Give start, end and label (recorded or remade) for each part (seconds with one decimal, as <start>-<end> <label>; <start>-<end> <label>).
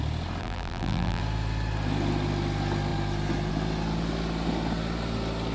0.0-0.4 recorded; 0.4-1.2 remade; 1.2-5.5 recorded